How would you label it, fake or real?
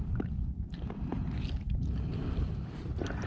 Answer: real